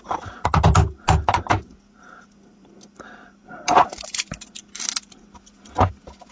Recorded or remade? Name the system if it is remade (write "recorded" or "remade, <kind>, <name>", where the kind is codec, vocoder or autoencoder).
recorded